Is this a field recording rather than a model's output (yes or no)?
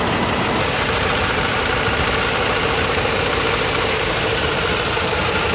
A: no